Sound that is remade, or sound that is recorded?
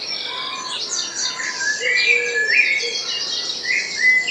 recorded